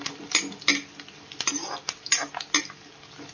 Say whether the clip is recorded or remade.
recorded